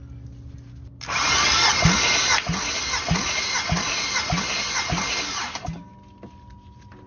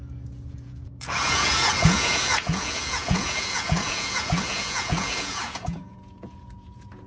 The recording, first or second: first